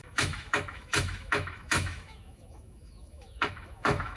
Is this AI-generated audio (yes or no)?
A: yes